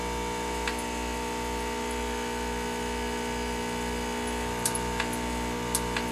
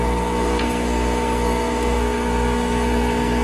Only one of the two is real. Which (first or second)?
first